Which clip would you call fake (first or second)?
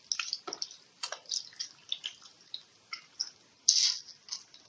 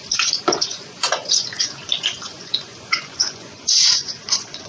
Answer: second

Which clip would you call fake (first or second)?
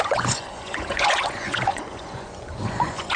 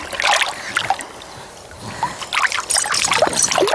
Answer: first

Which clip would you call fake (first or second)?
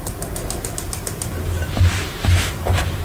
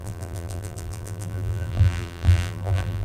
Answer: second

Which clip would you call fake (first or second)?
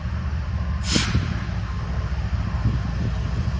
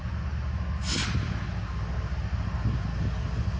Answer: first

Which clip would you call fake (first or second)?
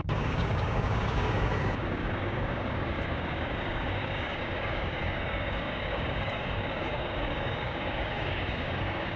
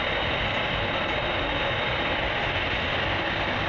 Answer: first